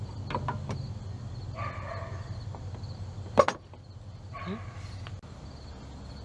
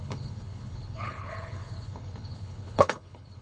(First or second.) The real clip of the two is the first